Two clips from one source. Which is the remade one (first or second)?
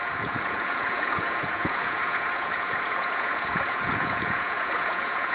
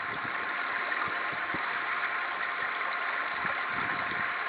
first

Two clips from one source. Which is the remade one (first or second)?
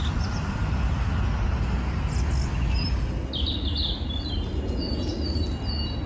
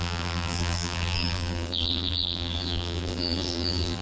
second